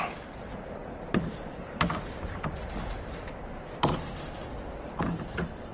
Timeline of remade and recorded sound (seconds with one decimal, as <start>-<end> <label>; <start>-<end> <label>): 0.0-4.4 remade; 4.4-5.0 recorded; 5.0-5.7 remade